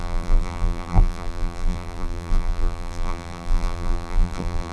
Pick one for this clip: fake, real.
fake